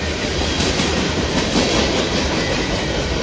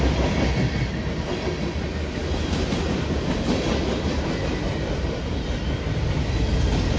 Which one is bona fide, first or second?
second